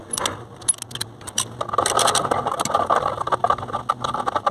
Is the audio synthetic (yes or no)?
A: no